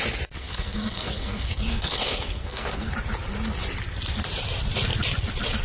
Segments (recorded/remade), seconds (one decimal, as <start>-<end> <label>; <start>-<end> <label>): 0.0-0.4 recorded; 0.4-2.9 remade; 2.9-5.6 recorded